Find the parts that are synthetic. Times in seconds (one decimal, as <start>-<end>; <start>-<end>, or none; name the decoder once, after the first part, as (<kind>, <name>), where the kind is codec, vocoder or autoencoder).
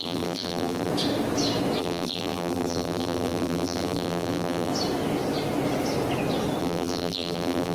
0.0-0.9 (vocoder, BigVGAN v2); 1.8-4.7; 6.6-7.7